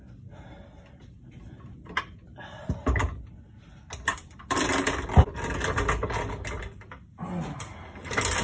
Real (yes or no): yes